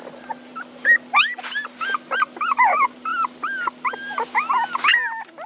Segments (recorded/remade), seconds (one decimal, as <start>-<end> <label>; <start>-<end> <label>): 0.0-5.5 recorded